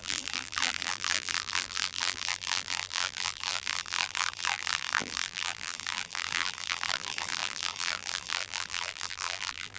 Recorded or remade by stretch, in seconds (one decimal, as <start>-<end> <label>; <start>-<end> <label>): 0.0-9.8 remade